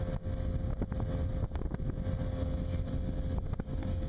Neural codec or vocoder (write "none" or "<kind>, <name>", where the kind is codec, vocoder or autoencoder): none